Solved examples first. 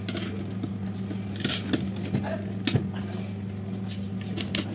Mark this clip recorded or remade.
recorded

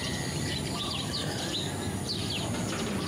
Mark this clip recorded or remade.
recorded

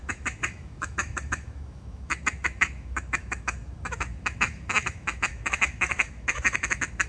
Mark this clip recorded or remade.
remade